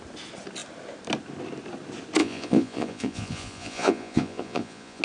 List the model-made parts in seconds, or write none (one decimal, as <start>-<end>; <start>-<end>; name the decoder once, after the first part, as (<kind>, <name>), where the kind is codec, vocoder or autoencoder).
2.2-5.0 (vocoder, Vocos)